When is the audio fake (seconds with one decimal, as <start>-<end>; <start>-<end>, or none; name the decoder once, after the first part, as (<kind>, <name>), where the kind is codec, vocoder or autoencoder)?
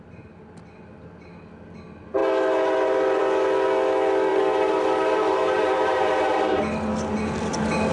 4.3-6.6 (vocoder, BigVGAN v2)